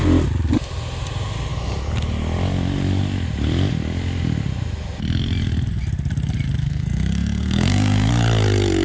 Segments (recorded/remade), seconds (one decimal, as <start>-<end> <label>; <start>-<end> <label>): 0.0-6.6 recorded; 6.6-8.1 remade; 8.1-8.8 recorded